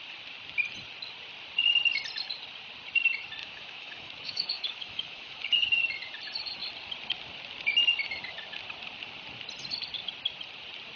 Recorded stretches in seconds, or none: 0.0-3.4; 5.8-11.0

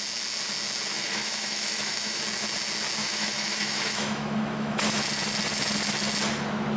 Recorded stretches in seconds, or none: 0.0-0.9; 2.2-3.0; 5.0-6.8

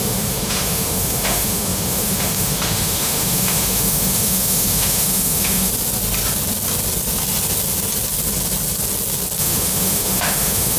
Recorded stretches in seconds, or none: 5.7-9.4